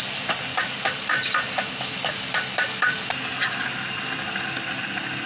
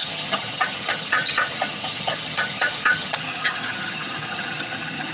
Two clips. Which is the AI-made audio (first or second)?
second